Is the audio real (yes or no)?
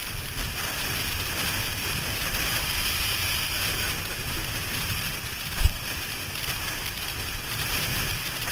yes